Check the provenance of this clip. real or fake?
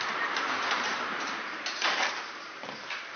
fake